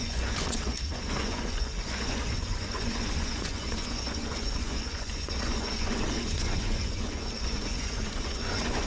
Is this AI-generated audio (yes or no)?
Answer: yes